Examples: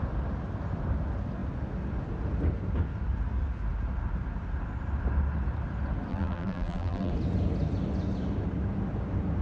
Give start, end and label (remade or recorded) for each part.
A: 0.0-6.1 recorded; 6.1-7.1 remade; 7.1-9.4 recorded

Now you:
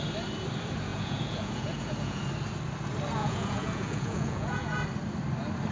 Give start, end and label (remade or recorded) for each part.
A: 0.0-0.9 recorded; 0.9-2.2 remade; 2.2-3.2 recorded; 3.2-4.8 remade; 4.8-5.7 recorded

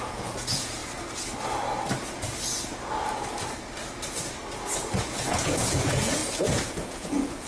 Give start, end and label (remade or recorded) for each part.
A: 0.0-0.8 remade; 0.8-5.0 recorded; 5.0-7.5 remade

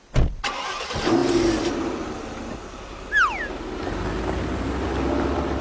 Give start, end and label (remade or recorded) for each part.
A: 0.0-5.6 recorded

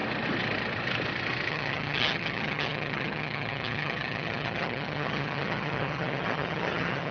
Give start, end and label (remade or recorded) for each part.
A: 0.0-1.5 recorded; 1.5-7.1 remade

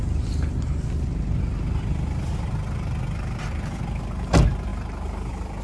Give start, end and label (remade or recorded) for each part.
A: 0.0-5.6 recorded

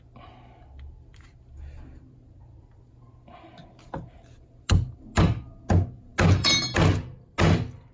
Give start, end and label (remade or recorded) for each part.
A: 0.0-7.9 recorded

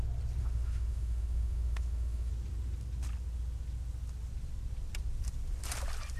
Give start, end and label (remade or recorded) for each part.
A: 0.0-0.4 recorded; 0.4-2.3 remade; 2.3-6.2 recorded